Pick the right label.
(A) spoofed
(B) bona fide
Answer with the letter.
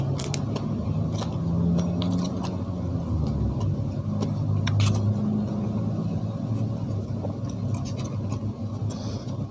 B